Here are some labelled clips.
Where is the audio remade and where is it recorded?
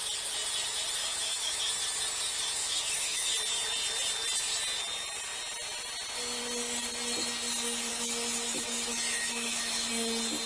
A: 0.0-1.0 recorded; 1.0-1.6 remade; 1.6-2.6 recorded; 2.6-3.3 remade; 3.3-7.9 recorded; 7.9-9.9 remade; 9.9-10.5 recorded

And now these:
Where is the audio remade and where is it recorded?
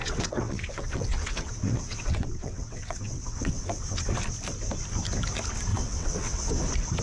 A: 0.0-4.2 remade; 4.2-5.7 recorded; 5.7-6.5 remade; 6.5-7.0 recorded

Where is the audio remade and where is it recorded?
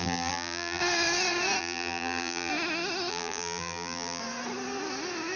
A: 0.0-0.8 remade; 0.8-1.6 recorded; 1.6-2.5 remade; 2.5-3.1 recorded; 3.1-4.2 remade; 4.2-5.4 recorded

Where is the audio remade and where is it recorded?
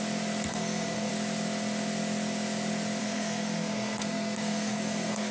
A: 0.0-0.5 recorded; 0.5-1.1 remade; 1.1-3.0 recorded; 3.0-5.3 remade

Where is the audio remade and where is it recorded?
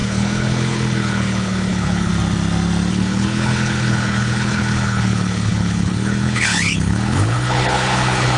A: 0.0-2.1 remade; 2.1-2.9 recorded; 2.9-8.4 remade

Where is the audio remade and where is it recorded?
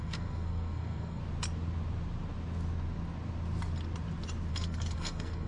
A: 0.0-1.2 remade; 1.2-4.5 recorded; 4.5-5.5 remade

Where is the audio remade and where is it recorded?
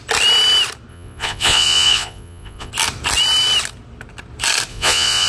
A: 0.0-0.9 recorded; 0.9-2.7 remade; 2.7-4.7 recorded; 4.7-5.3 remade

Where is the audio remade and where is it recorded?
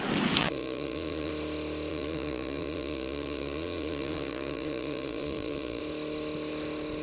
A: 0.0-0.4 recorded; 0.4-1.3 remade; 1.3-1.9 recorded; 1.9-5.8 remade; 5.8-7.0 recorded